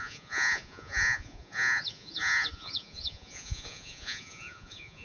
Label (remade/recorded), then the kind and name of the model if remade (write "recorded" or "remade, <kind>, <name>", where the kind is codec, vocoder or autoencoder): remade, vocoder, Vocos